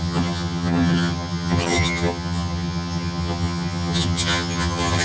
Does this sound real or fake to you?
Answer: fake